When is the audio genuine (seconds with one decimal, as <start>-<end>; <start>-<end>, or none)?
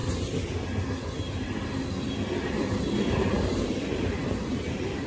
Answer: 0.0-3.1